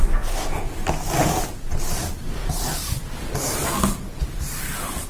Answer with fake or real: real